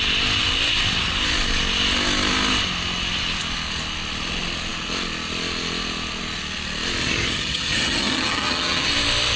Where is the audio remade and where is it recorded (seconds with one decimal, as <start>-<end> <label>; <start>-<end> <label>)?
0.0-7.0 recorded; 7.0-8.9 remade; 8.9-9.4 recorded